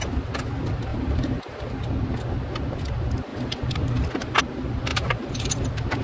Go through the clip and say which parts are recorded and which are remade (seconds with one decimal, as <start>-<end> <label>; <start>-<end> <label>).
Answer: 0.0-0.9 recorded; 0.9-1.7 remade; 1.7-3.3 recorded; 3.3-4.4 remade; 4.4-4.9 recorded; 4.9-5.5 remade; 5.5-6.0 recorded